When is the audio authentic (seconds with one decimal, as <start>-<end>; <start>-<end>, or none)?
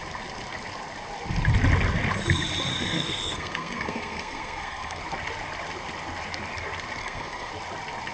0.0-2.7; 5.0-7.0; 7.5-8.1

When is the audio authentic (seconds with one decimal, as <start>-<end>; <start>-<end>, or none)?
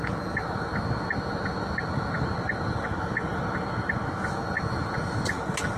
0.0-5.8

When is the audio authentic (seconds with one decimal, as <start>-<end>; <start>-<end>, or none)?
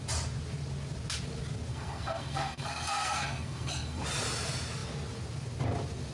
0.0-1.7; 4.0-6.1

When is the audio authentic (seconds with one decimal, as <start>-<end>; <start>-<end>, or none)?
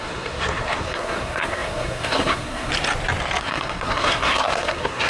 2.7-3.4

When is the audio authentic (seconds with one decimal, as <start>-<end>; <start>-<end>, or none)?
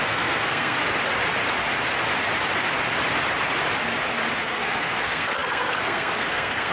0.8-4.4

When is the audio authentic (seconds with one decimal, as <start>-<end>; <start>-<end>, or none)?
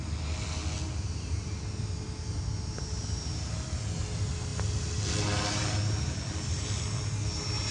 0.0-7.7